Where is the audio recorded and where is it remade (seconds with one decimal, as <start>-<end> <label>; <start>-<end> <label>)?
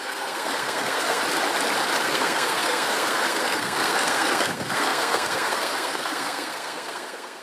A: 0.0-1.2 remade; 1.2-2.0 recorded; 2.0-7.4 remade